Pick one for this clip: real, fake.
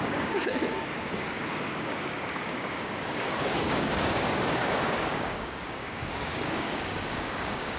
fake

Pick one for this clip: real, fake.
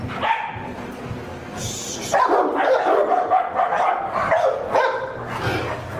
real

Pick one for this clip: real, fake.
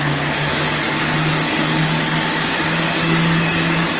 fake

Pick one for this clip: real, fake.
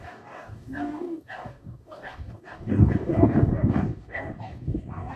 fake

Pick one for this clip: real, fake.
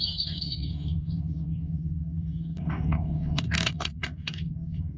fake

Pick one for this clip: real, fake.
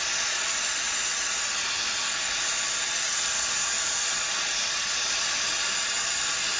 real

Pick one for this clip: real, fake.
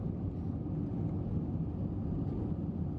real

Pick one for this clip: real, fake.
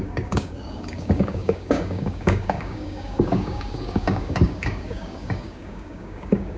fake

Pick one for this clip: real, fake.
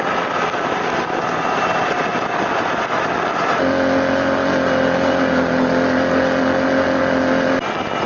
real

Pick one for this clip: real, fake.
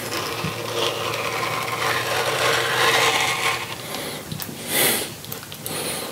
real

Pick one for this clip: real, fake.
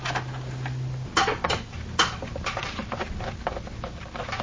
real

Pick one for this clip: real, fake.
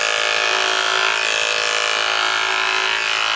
real